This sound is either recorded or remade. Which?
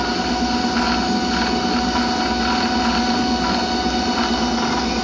recorded